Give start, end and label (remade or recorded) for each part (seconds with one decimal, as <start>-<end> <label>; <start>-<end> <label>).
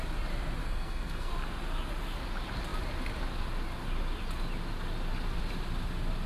0.0-0.6 recorded; 0.6-1.3 remade; 1.3-6.3 recorded